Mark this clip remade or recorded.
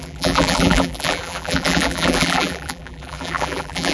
remade